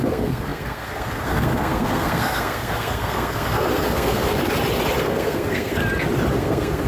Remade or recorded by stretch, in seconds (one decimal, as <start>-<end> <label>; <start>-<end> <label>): 0.0-4.4 remade; 4.4-5.0 recorded; 5.0-5.8 remade; 5.8-6.3 recorded; 6.3-6.9 remade